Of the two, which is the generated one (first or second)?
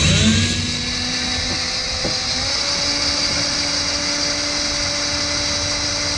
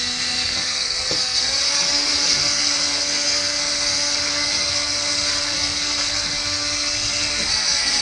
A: second